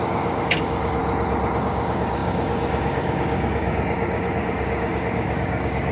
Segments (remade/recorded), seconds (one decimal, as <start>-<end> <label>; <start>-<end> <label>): 0.0-1.0 remade; 1.0-1.6 recorded; 1.6-5.9 remade